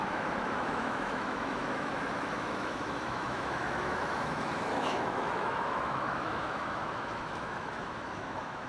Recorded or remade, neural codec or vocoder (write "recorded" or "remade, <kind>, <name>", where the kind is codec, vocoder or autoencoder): remade, autoencoder, DAC-VAE